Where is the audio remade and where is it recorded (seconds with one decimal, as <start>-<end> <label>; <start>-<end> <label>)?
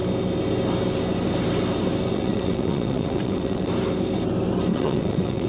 0.0-2.1 recorded; 2.1-3.7 remade; 3.7-4.7 recorded; 4.7-5.5 remade